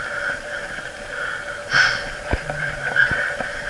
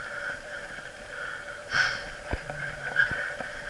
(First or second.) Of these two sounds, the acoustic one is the first